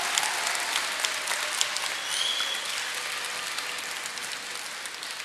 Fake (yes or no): no